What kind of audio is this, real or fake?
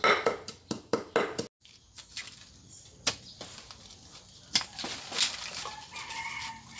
real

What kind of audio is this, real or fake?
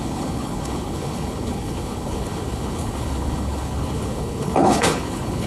fake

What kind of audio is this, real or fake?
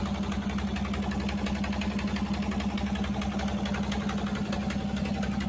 real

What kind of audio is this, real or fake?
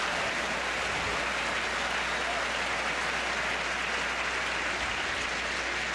real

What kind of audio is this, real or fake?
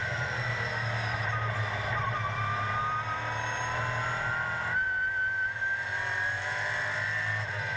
real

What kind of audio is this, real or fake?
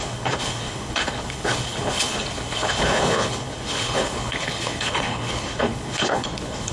fake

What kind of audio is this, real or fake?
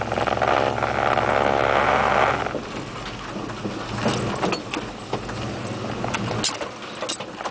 real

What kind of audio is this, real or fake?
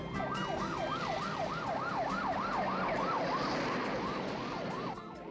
real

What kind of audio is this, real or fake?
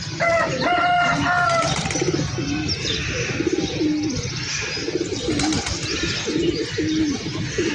real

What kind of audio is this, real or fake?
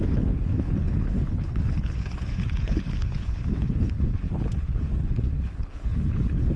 fake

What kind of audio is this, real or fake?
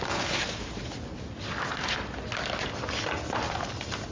real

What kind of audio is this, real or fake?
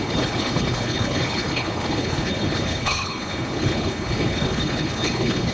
fake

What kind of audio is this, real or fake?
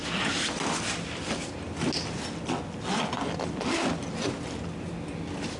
real